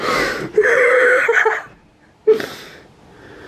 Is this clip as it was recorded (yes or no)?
yes